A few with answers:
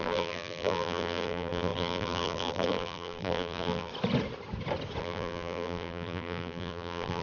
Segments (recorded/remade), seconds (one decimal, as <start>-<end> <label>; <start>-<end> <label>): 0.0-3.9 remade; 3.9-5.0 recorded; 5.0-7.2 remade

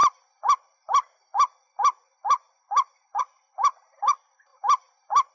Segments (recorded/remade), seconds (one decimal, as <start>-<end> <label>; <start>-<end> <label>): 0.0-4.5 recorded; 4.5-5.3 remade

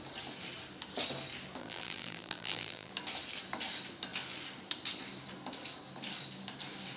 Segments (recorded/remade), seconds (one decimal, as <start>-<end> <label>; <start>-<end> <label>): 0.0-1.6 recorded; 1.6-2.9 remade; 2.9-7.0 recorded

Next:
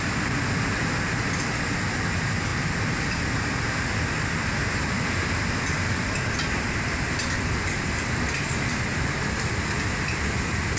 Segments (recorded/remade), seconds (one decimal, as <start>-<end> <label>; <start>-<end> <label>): 0.0-10.8 recorded

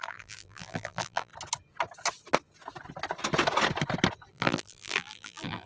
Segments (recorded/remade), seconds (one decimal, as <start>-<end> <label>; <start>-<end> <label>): 0.0-1.3 remade; 1.3-4.3 recorded; 4.3-5.7 remade

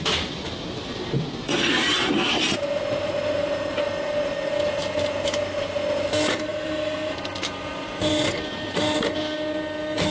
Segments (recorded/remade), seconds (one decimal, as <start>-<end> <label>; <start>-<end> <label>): 0.0-0.8 recorded; 0.8-3.6 remade; 3.6-6.5 recorded; 6.5-7.2 remade; 7.2-10.1 recorded

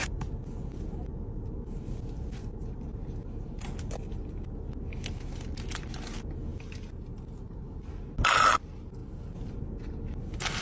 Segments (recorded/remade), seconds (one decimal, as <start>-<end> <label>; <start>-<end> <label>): 0.0-2.4 recorded; 2.4-3.1 remade; 3.1-9.0 recorded; 9.0-10.0 remade; 10.0-10.6 recorded